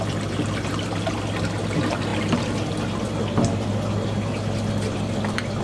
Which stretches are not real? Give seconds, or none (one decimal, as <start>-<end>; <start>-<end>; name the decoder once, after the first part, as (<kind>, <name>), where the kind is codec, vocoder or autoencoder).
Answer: none